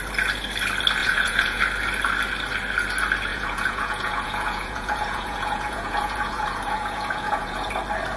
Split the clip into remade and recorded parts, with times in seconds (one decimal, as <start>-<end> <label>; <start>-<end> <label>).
0.0-1.0 recorded; 1.0-1.6 remade; 1.6-3.3 recorded; 3.3-7.7 remade; 7.7-8.2 recorded